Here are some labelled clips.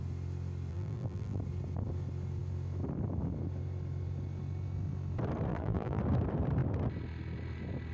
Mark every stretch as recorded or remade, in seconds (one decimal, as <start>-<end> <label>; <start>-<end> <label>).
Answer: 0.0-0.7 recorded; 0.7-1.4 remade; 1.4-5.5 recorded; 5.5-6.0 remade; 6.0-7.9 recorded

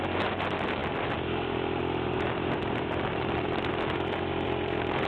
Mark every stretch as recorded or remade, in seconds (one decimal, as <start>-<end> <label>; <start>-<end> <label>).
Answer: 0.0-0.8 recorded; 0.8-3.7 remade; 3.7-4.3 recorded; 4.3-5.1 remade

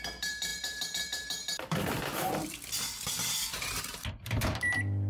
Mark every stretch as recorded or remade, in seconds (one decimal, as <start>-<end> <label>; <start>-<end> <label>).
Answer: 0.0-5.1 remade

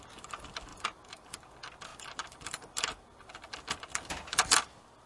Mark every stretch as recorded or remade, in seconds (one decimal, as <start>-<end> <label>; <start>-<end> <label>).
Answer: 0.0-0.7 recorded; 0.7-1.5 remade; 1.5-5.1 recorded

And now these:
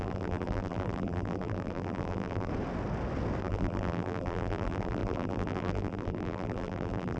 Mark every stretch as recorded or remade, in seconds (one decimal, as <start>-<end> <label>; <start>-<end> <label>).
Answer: 0.0-2.5 remade; 2.5-3.4 recorded; 3.4-7.2 remade

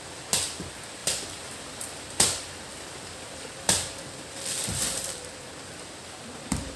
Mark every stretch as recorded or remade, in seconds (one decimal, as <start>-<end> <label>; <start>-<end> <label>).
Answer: 0.0-1.0 recorded; 1.0-5.1 remade; 5.1-6.8 recorded

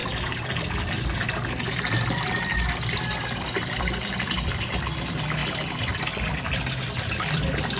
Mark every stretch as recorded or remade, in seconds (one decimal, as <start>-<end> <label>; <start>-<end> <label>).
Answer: 0.0-4.7 remade; 4.7-5.4 recorded; 5.4-7.8 remade